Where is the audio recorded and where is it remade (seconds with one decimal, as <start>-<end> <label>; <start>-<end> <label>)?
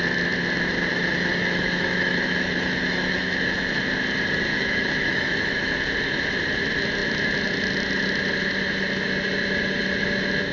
0.0-0.9 recorded; 0.9-3.8 remade; 3.8-4.5 recorded; 4.5-5.7 remade; 5.7-10.5 recorded